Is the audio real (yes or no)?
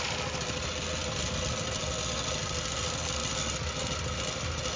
yes